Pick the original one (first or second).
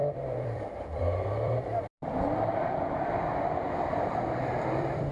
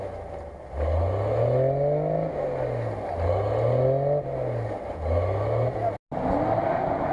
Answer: second